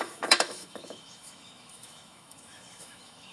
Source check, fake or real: fake